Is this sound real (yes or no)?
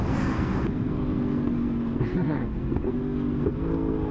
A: no